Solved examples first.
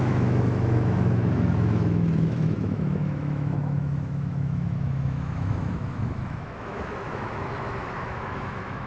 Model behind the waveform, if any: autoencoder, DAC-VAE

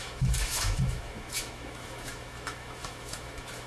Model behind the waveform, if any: autoencoder, DAC-VAE